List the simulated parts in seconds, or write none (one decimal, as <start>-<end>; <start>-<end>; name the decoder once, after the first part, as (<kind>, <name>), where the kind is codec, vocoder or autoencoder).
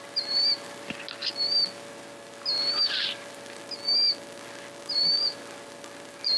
none